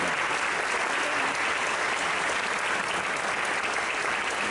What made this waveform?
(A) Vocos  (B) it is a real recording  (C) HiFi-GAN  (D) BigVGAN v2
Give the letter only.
B